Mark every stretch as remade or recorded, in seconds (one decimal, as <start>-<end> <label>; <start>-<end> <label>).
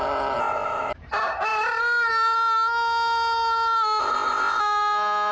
0.0-0.4 recorded; 0.4-0.9 remade; 0.9-4.0 recorded; 4.0-4.6 remade; 4.6-5.3 recorded